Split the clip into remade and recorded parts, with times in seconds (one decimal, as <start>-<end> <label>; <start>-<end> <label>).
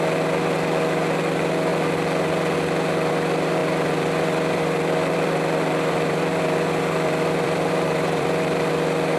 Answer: 0.0-3.6 recorded; 3.6-8.7 remade; 8.7-9.2 recorded